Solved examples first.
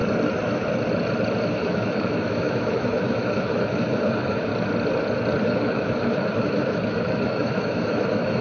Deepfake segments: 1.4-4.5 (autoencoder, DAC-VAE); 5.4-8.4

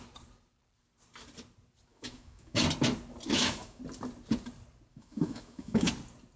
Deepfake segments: 1.9-2.6 (autoencoder, DAC-VAE); 3.3-3.8; 4.9-5.9

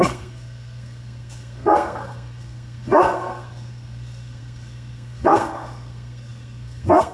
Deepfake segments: 0.0-7.1 (codec, SNAC)

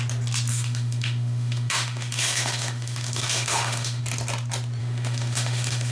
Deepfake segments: 0.5-4.0 (autoencoder, DAC-VAE); 4.8-5.9